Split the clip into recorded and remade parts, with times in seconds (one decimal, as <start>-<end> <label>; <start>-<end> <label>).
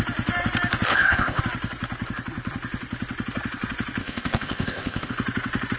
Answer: 0.0-0.9 recorded; 0.9-1.4 remade; 1.4-4.0 recorded; 4.0-5.1 remade; 5.1-5.8 recorded